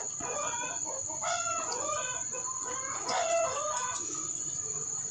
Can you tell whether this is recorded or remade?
remade